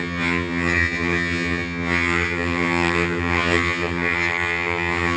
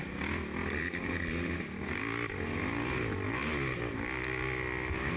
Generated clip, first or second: first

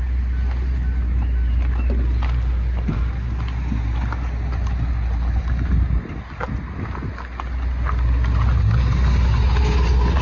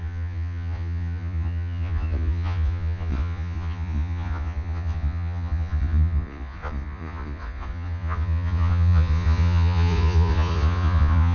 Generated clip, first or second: second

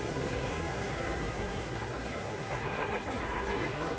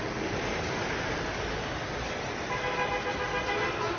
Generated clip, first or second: first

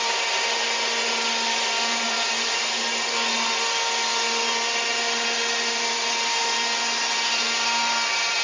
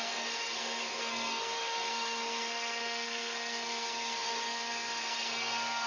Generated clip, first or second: second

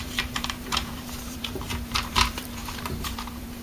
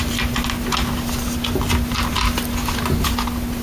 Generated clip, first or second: first